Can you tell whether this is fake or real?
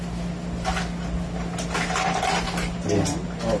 real